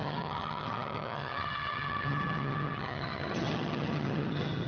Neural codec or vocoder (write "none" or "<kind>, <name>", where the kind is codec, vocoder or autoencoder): vocoder, HiFi-GAN